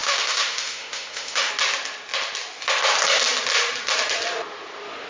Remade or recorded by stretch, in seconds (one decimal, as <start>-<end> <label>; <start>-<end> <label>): 0.0-1.5 remade; 1.5-5.1 recorded